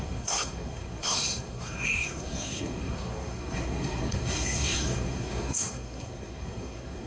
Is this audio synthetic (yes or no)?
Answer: yes